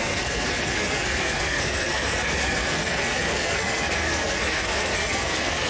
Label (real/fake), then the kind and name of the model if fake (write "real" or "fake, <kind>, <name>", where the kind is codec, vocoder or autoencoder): fake, codec, SNAC